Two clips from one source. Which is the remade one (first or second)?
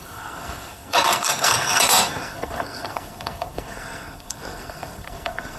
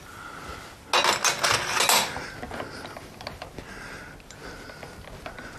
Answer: first